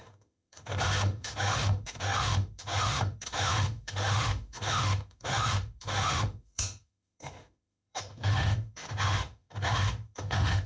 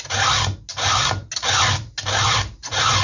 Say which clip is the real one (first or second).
second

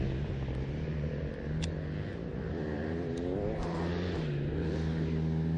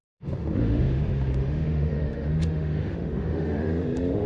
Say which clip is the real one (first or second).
first